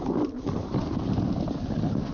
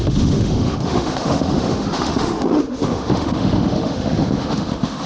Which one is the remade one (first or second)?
second